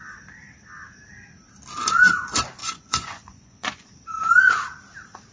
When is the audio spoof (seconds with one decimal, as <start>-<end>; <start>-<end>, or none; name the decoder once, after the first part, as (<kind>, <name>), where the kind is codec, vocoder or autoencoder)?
2.6-3.9 (vocoder, Vocos)